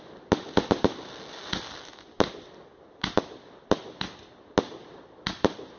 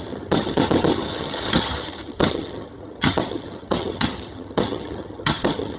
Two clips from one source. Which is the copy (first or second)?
second